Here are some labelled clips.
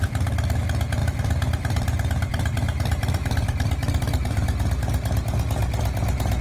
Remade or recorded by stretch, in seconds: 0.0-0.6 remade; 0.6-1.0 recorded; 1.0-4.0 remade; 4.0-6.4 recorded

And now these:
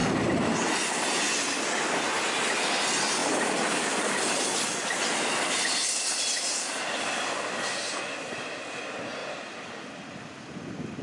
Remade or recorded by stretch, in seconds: 0.0-3.2 recorded; 3.2-8.0 remade; 8.0-9.2 recorded; 9.2-10.1 remade; 10.1-11.0 recorded